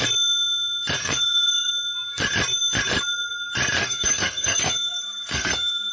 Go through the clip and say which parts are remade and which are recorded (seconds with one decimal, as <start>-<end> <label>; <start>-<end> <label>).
0.0-1.0 recorded; 1.0-1.7 remade; 1.7-3.8 recorded; 3.8-5.9 remade